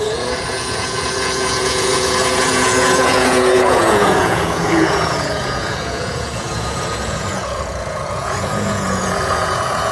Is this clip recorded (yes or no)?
no